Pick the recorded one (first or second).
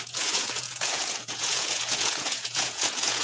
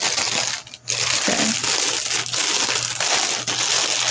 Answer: second